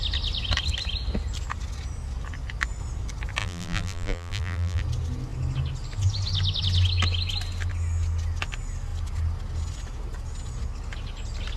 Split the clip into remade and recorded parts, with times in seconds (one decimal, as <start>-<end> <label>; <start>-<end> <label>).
0.0-3.4 recorded; 3.4-4.8 remade; 4.8-11.6 recorded